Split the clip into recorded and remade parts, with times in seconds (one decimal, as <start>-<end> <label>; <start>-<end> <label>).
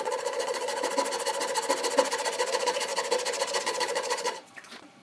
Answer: 0.0-0.7 remade; 0.7-2.5 recorded; 2.5-2.9 remade; 2.9-3.6 recorded; 3.6-5.0 remade